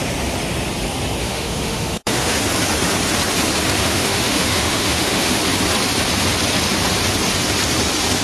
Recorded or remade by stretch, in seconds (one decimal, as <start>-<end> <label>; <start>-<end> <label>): 0.0-1.2 recorded; 1.2-2.4 remade; 2.4-3.8 recorded; 3.8-5.4 remade; 5.4-8.2 recorded